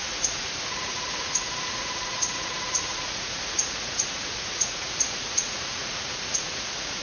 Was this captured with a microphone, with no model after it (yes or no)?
no